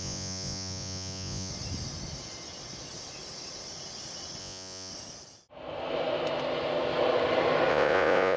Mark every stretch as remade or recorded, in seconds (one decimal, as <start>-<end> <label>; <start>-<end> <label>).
0.0-1.5 remade; 1.5-4.4 recorded; 4.4-4.9 remade; 4.9-7.7 recorded; 7.7-8.4 remade